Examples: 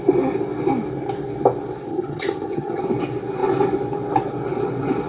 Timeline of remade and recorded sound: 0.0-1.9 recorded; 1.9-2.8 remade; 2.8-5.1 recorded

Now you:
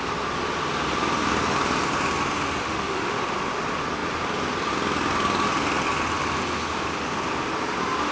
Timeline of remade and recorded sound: 0.0-2.6 recorded; 2.6-3.2 remade; 3.2-8.1 recorded